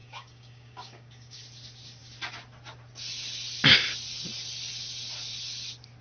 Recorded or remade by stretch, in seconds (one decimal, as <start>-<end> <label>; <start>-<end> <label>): 0.0-1.4 remade; 1.4-6.0 recorded